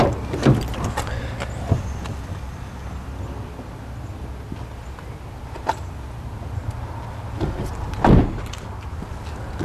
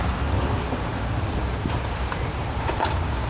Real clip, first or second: first